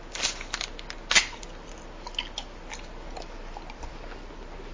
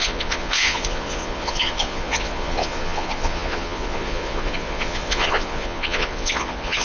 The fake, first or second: second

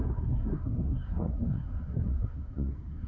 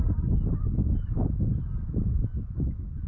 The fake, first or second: first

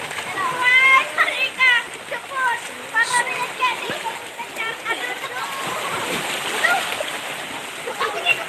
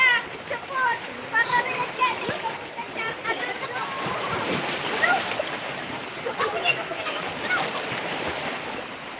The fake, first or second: second